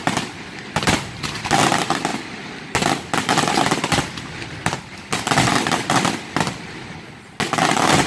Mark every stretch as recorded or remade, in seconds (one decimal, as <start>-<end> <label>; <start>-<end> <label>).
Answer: 0.0-8.1 recorded